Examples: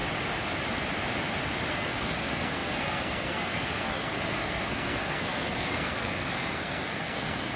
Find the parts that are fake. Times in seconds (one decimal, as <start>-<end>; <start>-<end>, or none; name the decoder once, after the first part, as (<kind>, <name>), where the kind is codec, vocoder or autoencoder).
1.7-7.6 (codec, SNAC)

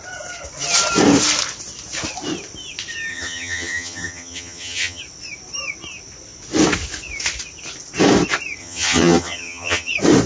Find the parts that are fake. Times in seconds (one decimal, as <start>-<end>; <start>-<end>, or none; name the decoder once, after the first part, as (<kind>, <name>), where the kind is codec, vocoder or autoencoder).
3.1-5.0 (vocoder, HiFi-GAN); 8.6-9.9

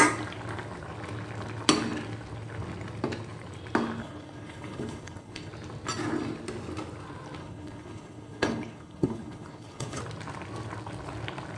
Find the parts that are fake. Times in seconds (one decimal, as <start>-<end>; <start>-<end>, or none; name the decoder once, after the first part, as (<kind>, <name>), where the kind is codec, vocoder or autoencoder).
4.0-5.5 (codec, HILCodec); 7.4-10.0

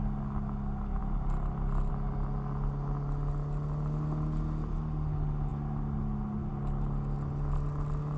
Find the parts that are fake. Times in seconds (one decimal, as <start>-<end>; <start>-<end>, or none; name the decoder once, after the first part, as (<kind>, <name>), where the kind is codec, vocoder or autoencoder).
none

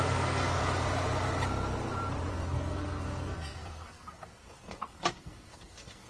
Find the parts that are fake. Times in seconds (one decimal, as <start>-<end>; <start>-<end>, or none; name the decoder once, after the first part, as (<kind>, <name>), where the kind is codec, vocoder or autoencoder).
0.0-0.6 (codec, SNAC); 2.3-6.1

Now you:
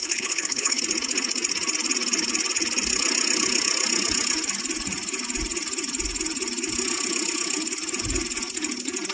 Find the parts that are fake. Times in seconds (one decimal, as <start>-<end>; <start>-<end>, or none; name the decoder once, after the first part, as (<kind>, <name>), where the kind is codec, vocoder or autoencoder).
0.0-0.8 (codec, HILCodec)

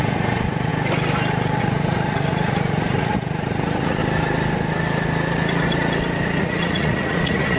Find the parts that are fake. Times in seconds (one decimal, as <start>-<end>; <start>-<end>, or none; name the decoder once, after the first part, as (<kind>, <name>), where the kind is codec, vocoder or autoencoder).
0.0-0.7 (vocoder, Vocos); 1.6-4.0; 6.4-7.6